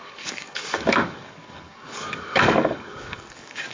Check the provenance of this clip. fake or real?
fake